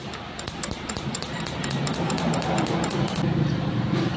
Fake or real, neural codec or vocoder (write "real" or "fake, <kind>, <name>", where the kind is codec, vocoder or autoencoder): fake, vocoder, BigVGAN v2